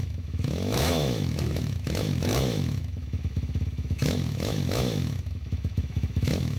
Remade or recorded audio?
remade